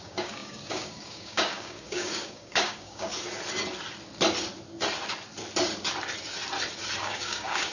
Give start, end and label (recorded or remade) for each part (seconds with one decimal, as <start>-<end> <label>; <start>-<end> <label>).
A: 0.0-3.1 remade; 3.1-7.0 recorded; 7.0-7.7 remade

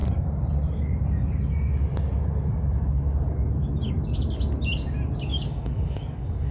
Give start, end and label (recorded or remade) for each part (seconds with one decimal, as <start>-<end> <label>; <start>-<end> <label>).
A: 0.0-5.3 recorded; 5.3-6.5 remade

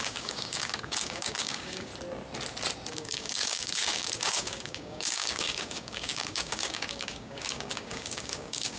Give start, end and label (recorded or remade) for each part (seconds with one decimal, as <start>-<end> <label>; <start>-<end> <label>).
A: 0.0-1.9 remade; 1.9-2.9 recorded; 2.9-8.8 remade

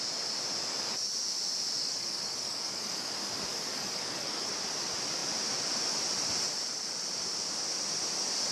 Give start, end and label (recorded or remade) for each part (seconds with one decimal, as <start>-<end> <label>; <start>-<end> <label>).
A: 0.0-1.8 recorded; 1.8-3.1 remade; 3.1-3.5 recorded; 3.5-4.5 remade; 4.5-8.5 recorded

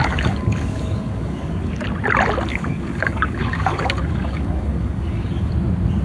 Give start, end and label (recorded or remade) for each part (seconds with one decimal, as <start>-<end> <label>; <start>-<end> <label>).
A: 0.0-1.8 remade; 1.8-2.5 recorded; 2.5-5.5 remade; 5.5-6.0 recorded

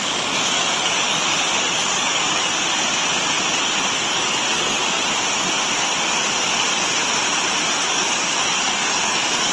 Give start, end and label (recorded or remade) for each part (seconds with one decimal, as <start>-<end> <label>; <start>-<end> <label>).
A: 0.0-2.5 remade; 2.5-3.9 recorded; 3.9-4.8 remade; 4.8-7.9 recorded; 7.9-9.5 remade

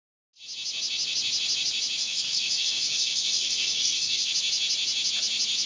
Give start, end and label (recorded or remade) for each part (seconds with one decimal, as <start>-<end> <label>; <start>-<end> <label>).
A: 0.0-2.0 recorded; 2.0-4.3 remade; 4.3-5.7 recorded

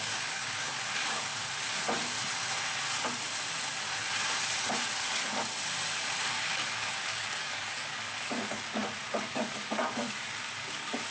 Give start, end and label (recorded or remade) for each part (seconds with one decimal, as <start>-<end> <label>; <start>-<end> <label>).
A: 0.0-1.3 remade; 1.3-6.3 recorded; 6.3-8.8 remade; 8.8-9.3 recorded; 9.3-11.1 remade